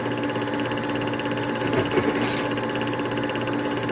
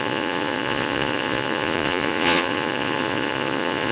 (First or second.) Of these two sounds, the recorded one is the first